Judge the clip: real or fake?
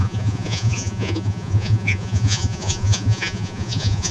fake